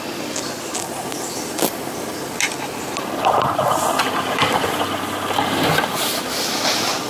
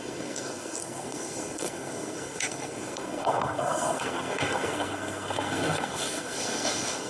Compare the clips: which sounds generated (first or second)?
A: second